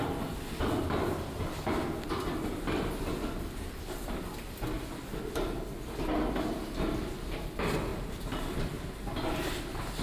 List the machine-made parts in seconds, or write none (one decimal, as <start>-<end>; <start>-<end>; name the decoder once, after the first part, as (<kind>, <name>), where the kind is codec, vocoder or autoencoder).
7.9-9.4 (vocoder, BigVGAN v2)